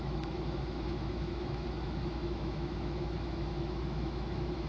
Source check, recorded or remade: remade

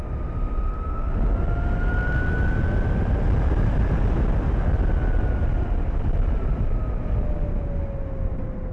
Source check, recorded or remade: recorded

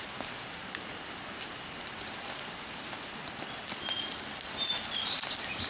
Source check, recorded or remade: recorded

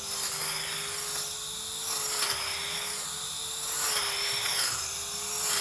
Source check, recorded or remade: recorded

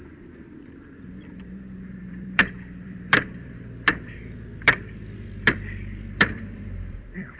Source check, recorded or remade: remade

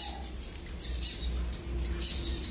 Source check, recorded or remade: recorded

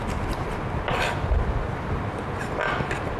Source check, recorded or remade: recorded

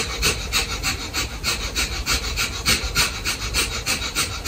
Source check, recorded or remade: recorded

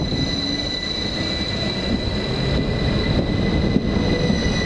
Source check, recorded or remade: recorded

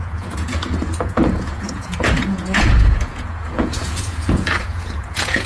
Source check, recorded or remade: remade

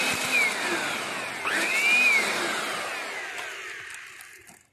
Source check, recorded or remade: recorded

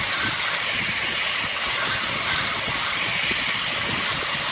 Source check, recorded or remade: recorded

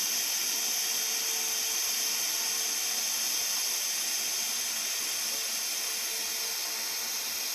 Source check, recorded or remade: recorded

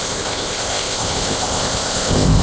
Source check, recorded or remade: remade